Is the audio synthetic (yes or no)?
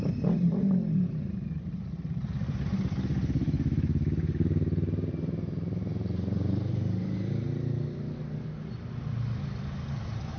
no